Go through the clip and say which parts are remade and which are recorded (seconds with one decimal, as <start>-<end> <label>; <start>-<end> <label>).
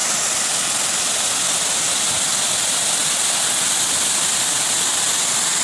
0.0-5.6 recorded